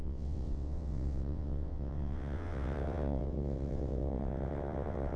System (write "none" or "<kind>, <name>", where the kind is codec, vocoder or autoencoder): vocoder, WaveNeXt